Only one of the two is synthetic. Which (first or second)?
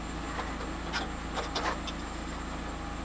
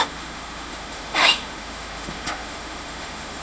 second